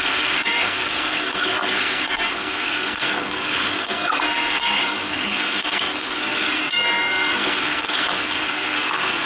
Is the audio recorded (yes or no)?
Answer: no